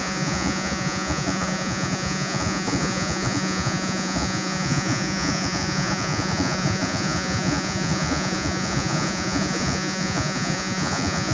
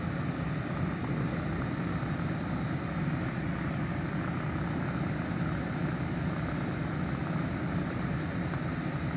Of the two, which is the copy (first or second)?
first